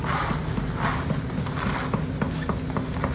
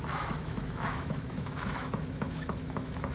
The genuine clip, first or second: first